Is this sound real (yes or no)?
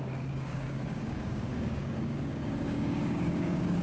no